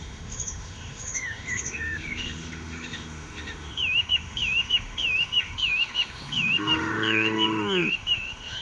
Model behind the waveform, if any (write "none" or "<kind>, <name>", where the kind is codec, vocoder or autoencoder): autoencoder, DAC-VAE